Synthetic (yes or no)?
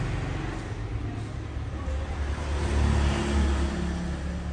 no